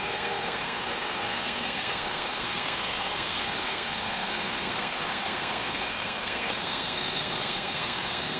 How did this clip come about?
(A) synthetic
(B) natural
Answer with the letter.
A